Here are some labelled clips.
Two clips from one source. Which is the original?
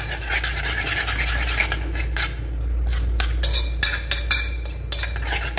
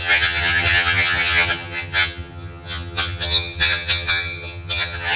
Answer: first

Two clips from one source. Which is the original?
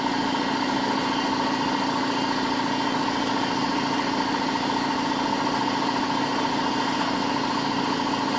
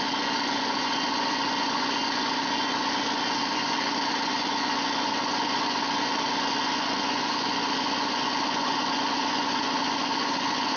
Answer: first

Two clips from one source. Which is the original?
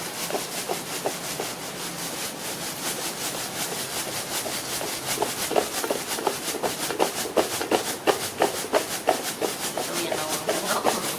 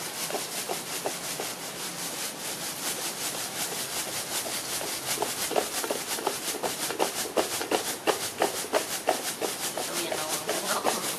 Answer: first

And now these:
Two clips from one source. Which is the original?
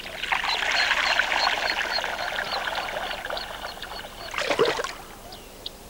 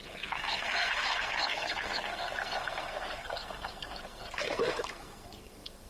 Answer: first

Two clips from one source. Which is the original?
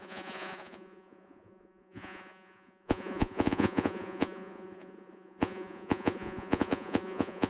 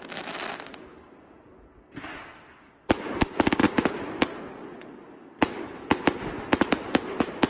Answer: second